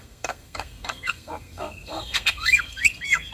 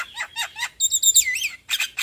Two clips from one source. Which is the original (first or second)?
second